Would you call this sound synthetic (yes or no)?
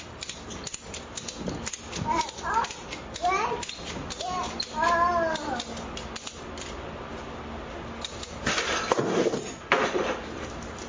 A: no